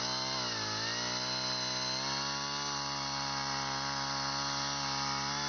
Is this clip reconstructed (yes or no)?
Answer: no